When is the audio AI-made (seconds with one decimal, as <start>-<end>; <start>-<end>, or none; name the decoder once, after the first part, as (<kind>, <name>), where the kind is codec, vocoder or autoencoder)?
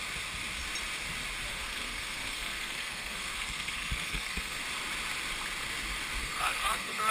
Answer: 1.5-4.6 (codec, SNAC); 6.2-7.1